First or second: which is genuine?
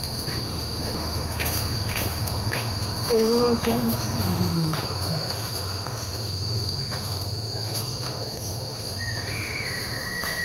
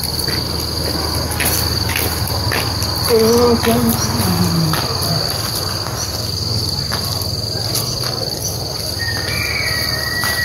second